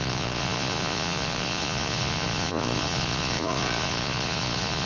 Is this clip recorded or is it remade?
remade